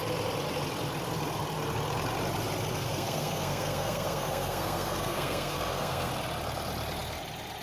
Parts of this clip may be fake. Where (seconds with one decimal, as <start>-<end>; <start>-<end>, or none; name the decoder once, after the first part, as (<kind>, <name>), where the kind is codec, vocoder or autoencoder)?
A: 2.7-6.1 (codec, SNAC)